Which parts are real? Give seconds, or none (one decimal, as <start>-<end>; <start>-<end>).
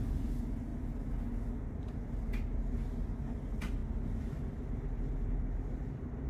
0.0-6.3